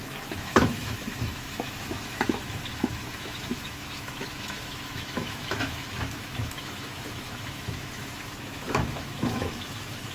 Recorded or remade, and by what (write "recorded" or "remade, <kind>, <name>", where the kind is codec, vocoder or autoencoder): remade, autoencoder, DAC-VAE